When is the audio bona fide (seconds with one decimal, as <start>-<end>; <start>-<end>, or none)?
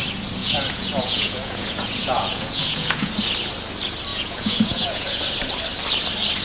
0.0-0.4; 3.1-4.1; 5.2-6.4